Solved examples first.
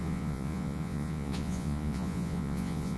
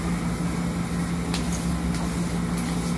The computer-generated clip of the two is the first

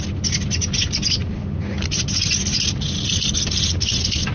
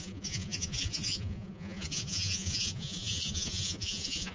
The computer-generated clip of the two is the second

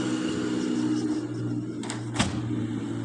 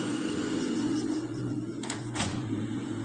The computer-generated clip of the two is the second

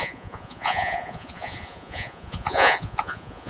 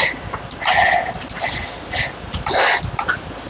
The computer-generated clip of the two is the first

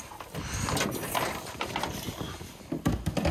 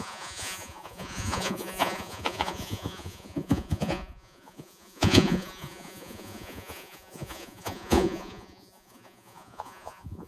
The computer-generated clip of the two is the second